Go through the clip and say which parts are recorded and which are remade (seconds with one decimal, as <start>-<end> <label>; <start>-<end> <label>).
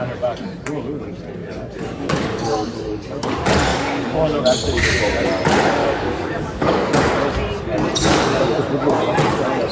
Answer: 0.0-1.4 recorded; 1.4-3.3 remade; 3.3-3.7 recorded; 3.7-4.4 remade; 4.4-5.8 recorded; 5.8-7.1 remade; 7.1-8.0 recorded; 8.0-8.6 remade; 8.6-9.7 recorded